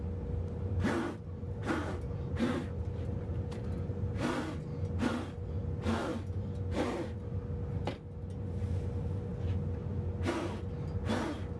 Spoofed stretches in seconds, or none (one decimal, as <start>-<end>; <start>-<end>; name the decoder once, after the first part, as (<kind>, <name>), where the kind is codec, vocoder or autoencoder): none